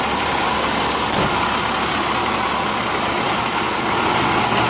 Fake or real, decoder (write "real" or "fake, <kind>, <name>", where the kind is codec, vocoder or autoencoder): real